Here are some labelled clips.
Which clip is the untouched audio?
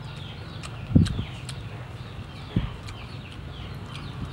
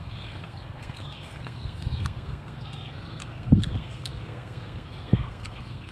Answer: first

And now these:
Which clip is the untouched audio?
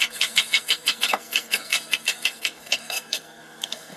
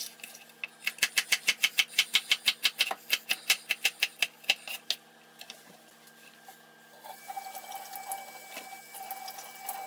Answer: second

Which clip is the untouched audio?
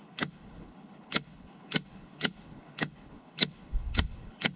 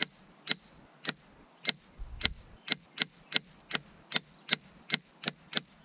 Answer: second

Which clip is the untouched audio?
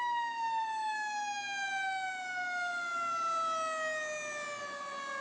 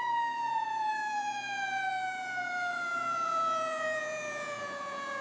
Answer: first